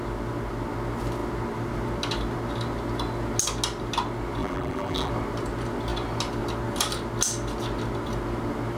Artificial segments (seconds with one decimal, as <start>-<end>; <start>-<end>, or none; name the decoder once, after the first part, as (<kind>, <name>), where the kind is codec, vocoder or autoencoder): 4.4-5.1 (vocoder, BigVGAN v2)